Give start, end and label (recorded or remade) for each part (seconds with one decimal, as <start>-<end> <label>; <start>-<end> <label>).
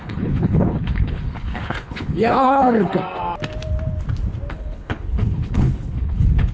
0.0-2.9 remade; 2.9-4.5 recorded; 4.5-6.5 remade